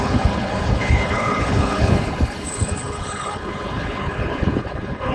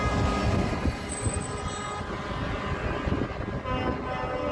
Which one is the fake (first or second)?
first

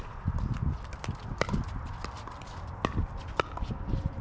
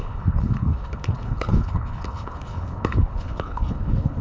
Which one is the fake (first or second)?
second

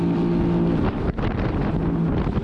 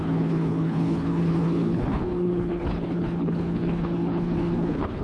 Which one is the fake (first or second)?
second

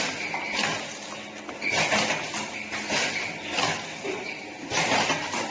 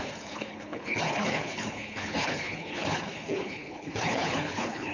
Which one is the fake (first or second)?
second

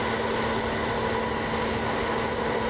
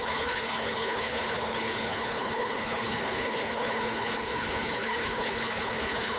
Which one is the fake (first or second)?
second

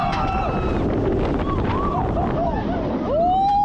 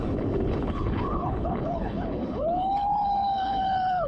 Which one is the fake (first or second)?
second